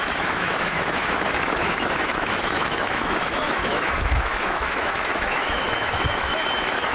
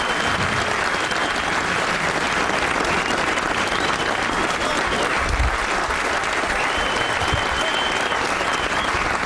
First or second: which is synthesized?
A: first